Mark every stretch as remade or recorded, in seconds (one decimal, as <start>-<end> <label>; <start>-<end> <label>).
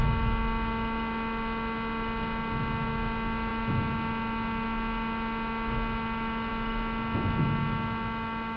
0.0-8.6 recorded